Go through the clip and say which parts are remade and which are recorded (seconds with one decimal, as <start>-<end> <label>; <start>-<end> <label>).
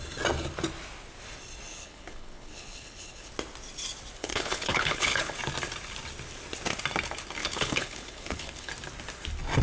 0.0-1.7 recorded; 1.7-3.3 remade; 3.3-4.2 recorded; 4.2-5.4 remade; 5.4-7.4 recorded; 7.4-8.7 remade; 8.7-9.6 recorded